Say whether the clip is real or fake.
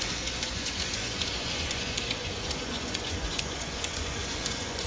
fake